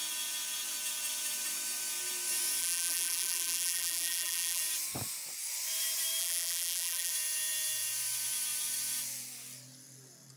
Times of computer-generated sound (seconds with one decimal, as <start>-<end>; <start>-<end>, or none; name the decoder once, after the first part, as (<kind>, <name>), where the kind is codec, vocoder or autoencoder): 2.6-4.6 (vocoder, BigVGAN v2); 6.2-7.1